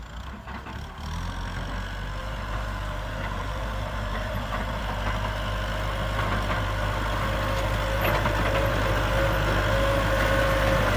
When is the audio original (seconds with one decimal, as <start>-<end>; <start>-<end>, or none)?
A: 0.0-2.2; 4.8-11.0